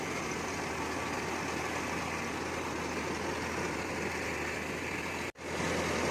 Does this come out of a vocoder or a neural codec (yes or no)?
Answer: no